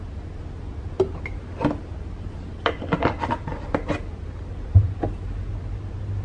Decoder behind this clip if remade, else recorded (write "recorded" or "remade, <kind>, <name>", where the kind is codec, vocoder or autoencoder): recorded